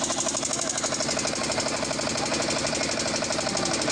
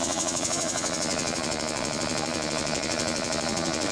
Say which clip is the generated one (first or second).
second